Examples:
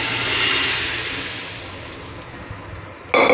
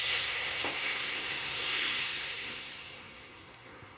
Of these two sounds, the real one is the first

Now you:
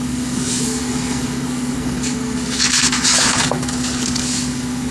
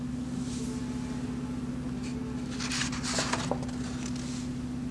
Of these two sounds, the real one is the second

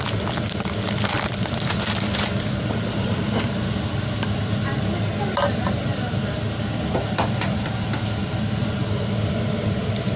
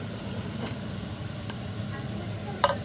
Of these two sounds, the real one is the first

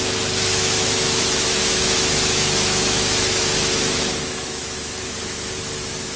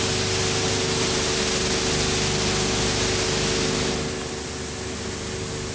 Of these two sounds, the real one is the second